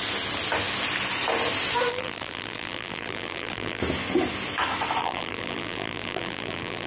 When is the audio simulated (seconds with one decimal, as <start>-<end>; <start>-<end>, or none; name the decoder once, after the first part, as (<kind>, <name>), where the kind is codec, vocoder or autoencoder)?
1.9-3.8 (vocoder, BigVGAN v2); 5.0-6.9